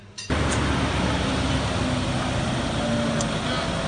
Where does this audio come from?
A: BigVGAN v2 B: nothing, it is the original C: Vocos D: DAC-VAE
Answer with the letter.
B